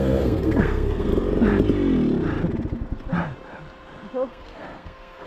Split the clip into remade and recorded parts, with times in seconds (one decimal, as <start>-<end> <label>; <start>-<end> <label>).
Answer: 0.0-1.1 remade; 1.1-4.3 recorded; 4.3-5.3 remade